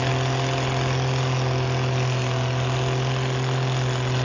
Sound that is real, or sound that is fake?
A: real